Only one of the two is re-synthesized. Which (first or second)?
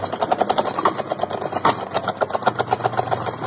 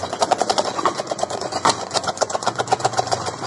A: second